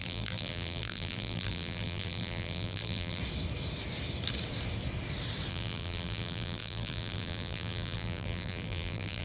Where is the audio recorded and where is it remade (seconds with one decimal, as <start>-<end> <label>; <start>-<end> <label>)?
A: 0.0-3.2 remade; 3.2-5.5 recorded; 5.5-9.2 remade